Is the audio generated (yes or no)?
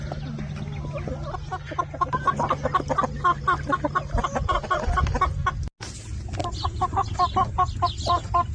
no